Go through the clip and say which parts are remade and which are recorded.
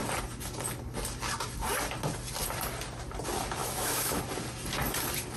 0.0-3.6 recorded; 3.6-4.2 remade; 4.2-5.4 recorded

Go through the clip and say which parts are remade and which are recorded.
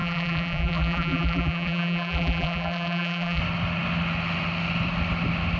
0.0-3.4 remade; 3.4-5.6 recorded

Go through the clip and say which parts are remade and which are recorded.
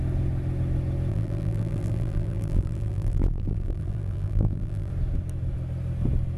0.0-1.1 recorded; 1.1-4.9 remade; 4.9-6.4 recorded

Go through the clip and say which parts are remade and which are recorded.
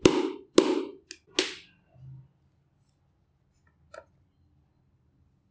0.0-5.5 recorded